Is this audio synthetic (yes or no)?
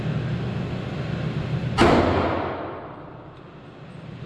no